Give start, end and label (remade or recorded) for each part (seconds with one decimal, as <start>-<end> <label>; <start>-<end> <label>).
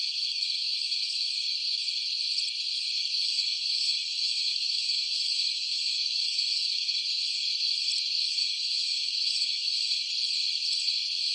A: 0.0-1.2 remade; 1.2-3.2 recorded; 3.2-7.0 remade; 7.0-8.4 recorded; 8.4-10.0 remade; 10.0-11.3 recorded